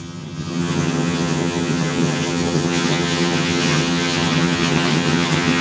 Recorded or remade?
remade